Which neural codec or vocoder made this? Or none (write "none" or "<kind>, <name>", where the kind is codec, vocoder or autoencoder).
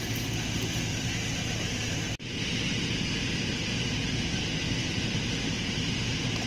none